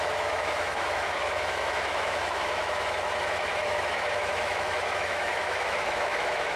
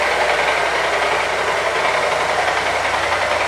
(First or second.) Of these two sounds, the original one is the second